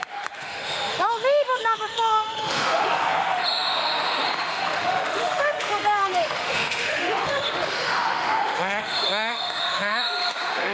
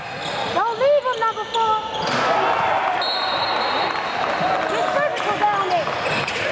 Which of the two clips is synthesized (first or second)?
first